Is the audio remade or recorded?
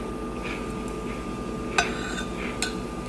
recorded